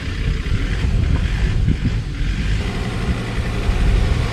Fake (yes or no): no